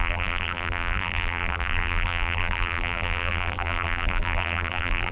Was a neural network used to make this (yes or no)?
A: yes